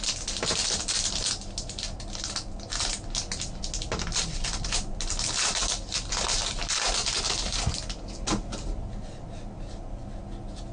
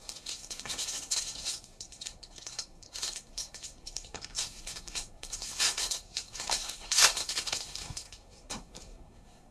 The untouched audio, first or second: first